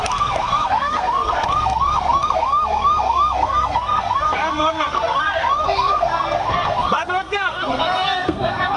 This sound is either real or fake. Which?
fake